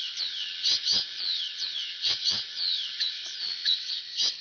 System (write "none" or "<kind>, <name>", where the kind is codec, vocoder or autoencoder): vocoder, WaveNeXt